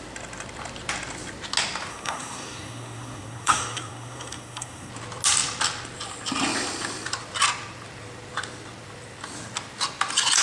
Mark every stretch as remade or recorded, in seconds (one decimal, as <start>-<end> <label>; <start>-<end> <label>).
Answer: 0.0-1.9 recorded; 1.9-4.9 remade; 4.9-10.4 recorded